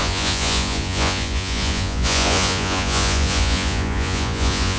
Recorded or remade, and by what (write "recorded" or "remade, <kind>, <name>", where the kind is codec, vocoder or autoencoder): remade, vocoder, Vocos